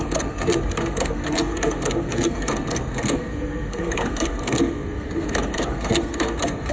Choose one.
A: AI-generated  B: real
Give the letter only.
A